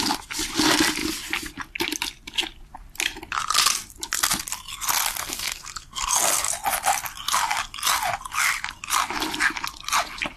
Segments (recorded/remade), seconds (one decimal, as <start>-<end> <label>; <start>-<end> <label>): 0.0-5.2 recorded; 5.2-6.5 remade; 6.5-10.4 recorded